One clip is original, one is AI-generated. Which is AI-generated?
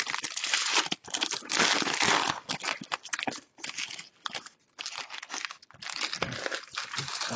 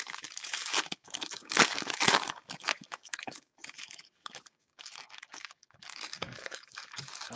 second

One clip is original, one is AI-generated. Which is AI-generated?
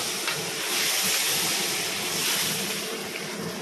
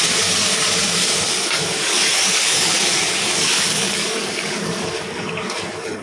second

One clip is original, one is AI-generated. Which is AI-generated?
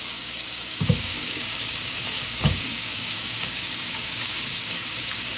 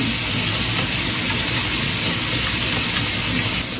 first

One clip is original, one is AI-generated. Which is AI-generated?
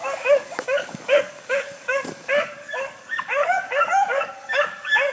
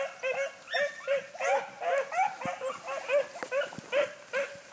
first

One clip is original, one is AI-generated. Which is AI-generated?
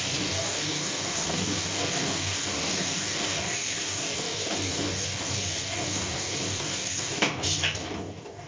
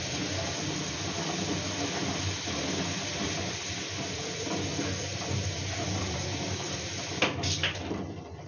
first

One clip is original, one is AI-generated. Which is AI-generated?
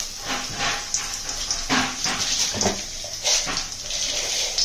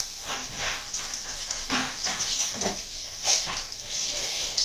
second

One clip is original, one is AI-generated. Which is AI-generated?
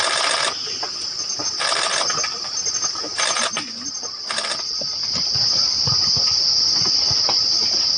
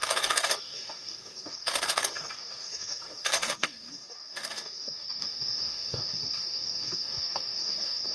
second